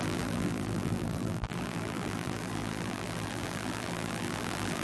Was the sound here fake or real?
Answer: fake